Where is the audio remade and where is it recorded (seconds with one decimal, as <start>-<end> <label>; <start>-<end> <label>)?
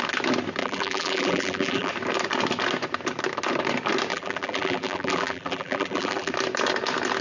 0.0-0.6 recorded; 0.6-1.9 remade; 1.9-4.1 recorded; 4.1-6.3 remade; 6.3-7.2 recorded